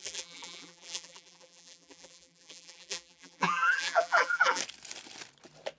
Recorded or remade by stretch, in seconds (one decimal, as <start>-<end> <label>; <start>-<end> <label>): 0.0-4.6 remade; 4.6-5.8 recorded